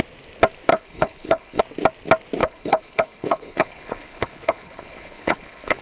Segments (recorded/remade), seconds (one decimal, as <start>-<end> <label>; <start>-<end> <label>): 0.0-0.7 recorded; 0.7-1.6 remade; 1.6-2.4 recorded; 2.4-5.8 remade